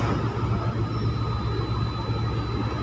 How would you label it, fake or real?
real